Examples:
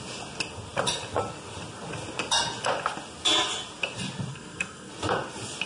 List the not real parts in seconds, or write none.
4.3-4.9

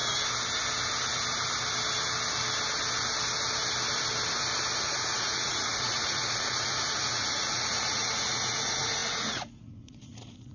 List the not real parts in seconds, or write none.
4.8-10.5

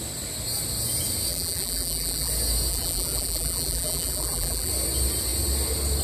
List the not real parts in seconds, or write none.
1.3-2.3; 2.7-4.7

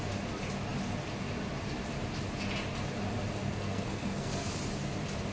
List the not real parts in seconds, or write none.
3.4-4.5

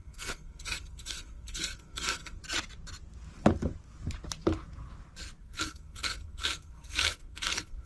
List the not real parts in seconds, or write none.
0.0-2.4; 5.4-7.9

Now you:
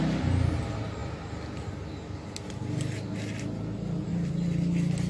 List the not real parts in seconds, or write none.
none

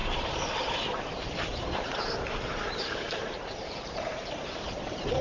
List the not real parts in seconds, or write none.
0.0-5.2

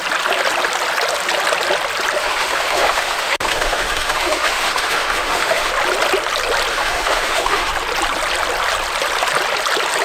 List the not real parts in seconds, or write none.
2.2-5.7; 6.7-7.7